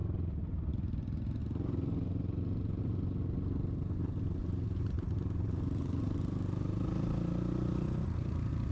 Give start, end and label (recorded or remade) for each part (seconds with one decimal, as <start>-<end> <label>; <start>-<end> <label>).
0.0-8.7 recorded